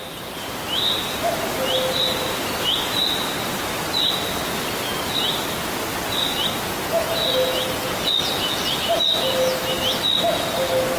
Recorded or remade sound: recorded